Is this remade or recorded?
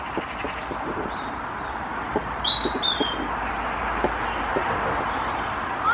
recorded